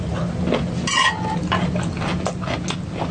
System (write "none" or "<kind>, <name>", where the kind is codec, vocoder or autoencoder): none